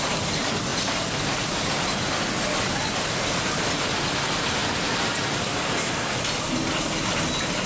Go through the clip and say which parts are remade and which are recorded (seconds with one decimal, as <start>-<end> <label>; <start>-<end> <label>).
0.0-7.7 recorded

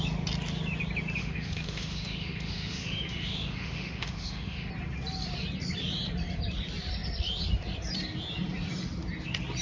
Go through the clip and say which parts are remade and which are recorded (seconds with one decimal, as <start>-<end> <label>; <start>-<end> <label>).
0.0-1.2 recorded; 1.2-4.7 remade; 4.7-9.6 recorded

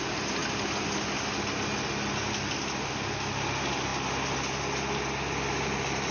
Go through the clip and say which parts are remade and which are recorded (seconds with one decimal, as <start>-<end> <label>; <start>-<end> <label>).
0.0-6.1 recorded

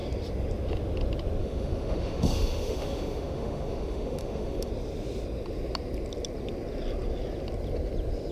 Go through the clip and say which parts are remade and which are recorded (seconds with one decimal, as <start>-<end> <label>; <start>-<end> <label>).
0.0-1.4 recorded; 1.4-4.7 remade; 4.7-8.3 recorded